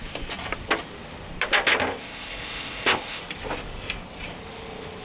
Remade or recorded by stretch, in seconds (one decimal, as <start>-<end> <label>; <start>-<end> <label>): 0.0-2.0 recorded; 2.0-3.2 remade; 3.2-5.0 recorded